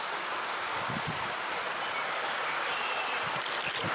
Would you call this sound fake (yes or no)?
no